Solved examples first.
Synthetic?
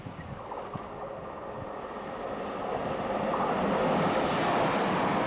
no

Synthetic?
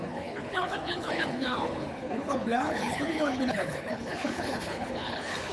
yes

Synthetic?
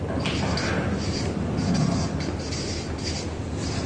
no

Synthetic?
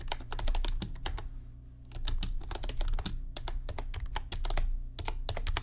no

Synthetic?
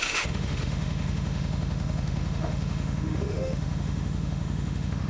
yes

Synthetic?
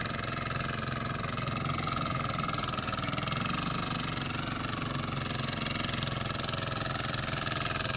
no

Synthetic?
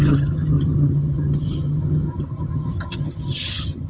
yes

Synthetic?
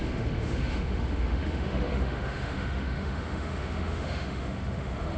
yes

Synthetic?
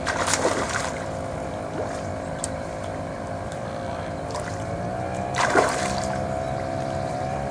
yes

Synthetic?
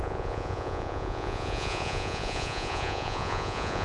yes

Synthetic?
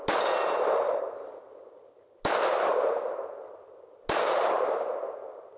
no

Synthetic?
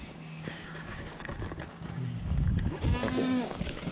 yes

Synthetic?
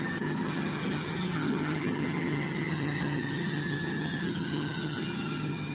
yes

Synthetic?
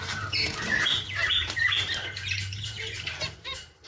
yes